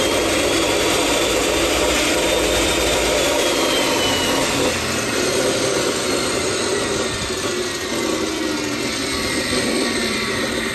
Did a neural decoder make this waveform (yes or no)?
yes